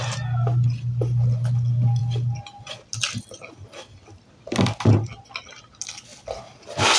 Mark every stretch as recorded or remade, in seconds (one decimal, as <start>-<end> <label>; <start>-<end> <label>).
0.0-7.0 recorded